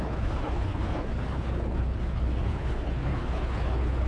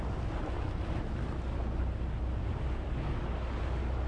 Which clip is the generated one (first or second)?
first